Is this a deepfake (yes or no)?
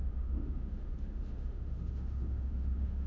yes